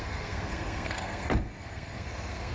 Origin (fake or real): fake